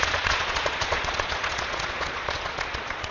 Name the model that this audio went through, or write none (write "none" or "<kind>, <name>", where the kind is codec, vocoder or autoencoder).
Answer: vocoder, Vocos